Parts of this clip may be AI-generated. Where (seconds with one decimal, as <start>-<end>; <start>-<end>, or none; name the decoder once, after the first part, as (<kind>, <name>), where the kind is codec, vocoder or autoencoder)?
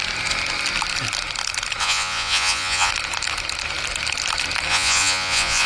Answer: 1.8-2.9 (vocoder, Vocos); 4.7-5.7